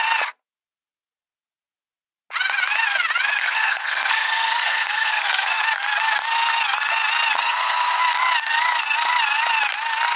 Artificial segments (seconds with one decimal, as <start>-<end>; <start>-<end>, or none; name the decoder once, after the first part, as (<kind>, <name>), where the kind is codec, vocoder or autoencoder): 3.4-5.6 (codec, SNAC); 7.4-8.0

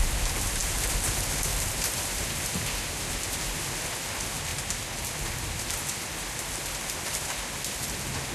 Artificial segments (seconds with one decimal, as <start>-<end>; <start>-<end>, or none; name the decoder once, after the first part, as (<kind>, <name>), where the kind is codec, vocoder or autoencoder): none

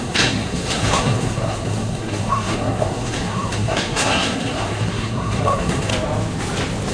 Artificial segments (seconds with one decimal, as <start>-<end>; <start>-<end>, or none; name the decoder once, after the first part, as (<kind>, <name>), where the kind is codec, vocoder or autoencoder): 0.0-5.9 (codec, SNAC)

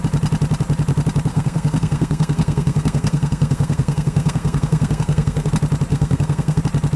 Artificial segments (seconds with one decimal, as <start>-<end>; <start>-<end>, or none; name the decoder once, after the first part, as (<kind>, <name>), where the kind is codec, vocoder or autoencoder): 1.3-5.5 (codec, SNAC); 5.9-6.6

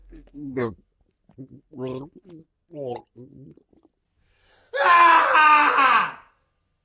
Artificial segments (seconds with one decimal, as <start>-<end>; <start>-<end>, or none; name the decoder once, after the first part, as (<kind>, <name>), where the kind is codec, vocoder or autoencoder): 0.0-0.7 (codec, SNAC)

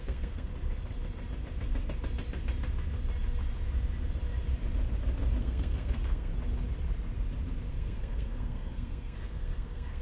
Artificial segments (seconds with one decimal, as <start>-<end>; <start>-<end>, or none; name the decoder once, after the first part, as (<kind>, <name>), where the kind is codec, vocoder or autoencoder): 0.0-0.5 (codec, SNAC); 5.4-6.3; 7.7-10.0

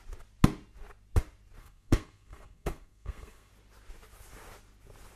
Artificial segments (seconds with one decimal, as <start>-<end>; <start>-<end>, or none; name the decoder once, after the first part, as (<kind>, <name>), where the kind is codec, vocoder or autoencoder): 1.6-3.5 (codec, SNAC)